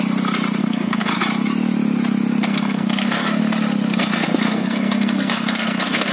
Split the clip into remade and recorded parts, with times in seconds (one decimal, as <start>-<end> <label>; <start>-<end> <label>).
0.0-0.6 recorded; 0.6-1.2 remade; 1.2-2.4 recorded; 2.4-3.4 remade; 3.4-3.9 recorded; 3.9-6.1 remade